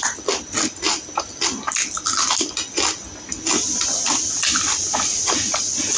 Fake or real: real